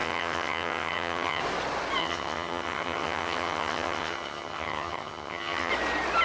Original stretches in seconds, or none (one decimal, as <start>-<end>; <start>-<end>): 1.4-2.0; 5.7-6.2